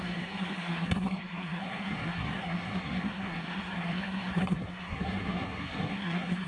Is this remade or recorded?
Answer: remade